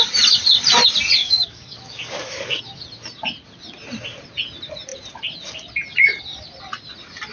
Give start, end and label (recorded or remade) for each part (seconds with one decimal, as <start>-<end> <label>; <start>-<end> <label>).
0.0-1.2 recorded; 1.2-2.6 remade; 2.6-7.3 recorded